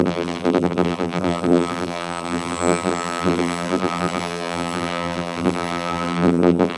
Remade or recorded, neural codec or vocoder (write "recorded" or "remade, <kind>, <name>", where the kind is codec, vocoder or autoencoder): remade, vocoder, BigVGAN v2